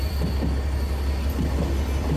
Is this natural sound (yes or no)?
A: yes